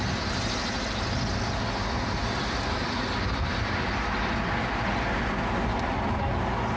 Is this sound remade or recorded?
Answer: recorded